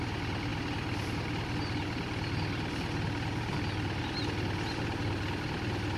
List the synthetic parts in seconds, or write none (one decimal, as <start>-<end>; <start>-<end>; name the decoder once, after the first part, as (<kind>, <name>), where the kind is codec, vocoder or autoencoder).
none